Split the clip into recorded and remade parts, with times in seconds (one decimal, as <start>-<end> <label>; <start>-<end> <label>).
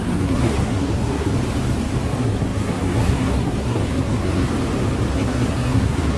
0.0-1.3 remade; 1.3-2.1 recorded; 2.1-4.5 remade; 4.5-5.1 recorded; 5.1-6.2 remade